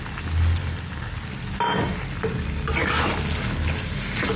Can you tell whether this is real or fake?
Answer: real